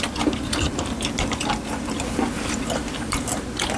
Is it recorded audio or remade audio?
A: recorded